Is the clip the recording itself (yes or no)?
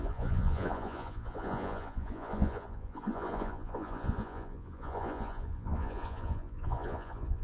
no